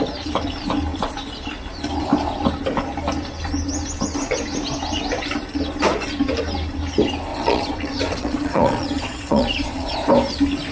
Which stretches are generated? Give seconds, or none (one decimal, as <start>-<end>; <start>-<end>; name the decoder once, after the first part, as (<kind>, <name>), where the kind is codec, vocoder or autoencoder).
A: 7.3-10.1 (vocoder, Vocos)